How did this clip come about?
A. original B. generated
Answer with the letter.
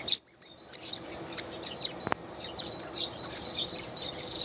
B